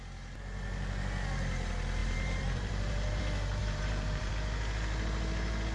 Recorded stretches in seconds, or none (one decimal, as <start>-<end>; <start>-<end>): 0.0-2.0; 3.2-3.6; 4.3-5.7